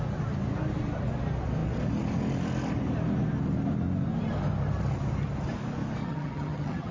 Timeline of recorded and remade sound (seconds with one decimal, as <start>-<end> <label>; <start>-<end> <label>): 0.0-6.0 recorded; 6.0-6.9 remade